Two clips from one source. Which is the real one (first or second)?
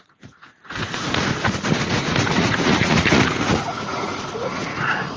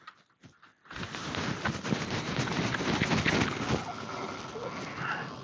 second